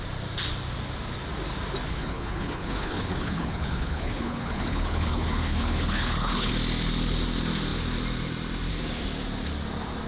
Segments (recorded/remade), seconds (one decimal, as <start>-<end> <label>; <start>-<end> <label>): 0.0-1.9 recorded; 1.9-6.5 remade; 6.5-10.1 recorded